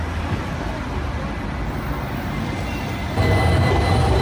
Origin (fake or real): real